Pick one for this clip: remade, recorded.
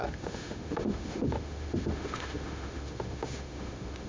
remade